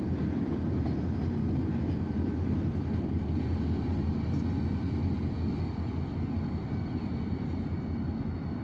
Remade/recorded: recorded